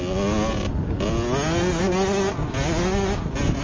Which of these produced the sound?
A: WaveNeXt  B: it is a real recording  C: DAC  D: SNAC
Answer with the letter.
B